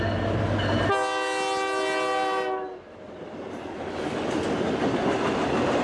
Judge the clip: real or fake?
real